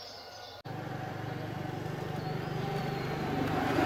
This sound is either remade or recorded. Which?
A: recorded